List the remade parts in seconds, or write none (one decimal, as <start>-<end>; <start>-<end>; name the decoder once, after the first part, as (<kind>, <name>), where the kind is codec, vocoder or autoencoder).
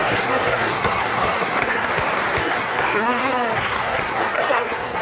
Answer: 0.0-1.9 (codec, SNAC); 2.4-5.0